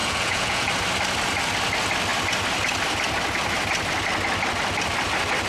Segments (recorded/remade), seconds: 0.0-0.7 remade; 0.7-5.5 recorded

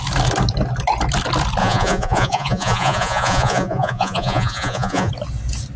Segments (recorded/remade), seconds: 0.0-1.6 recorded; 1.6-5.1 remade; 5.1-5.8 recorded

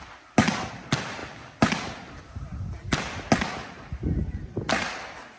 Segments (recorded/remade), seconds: 0.0-5.4 recorded

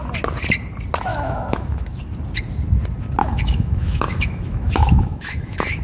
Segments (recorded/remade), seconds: 0.0-1.1 recorded; 1.1-2.0 remade; 2.0-3.2 recorded; 3.2-5.8 remade

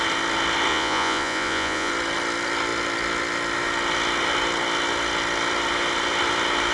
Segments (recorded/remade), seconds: 0.0-0.7 recorded; 0.7-1.9 remade; 1.9-6.7 recorded

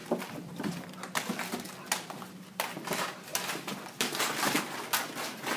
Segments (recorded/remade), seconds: 0.0-5.6 recorded

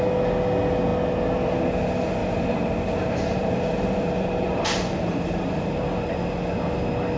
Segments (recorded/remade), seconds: 0.0-2.2 recorded; 2.2-6.1 remade; 6.1-7.2 recorded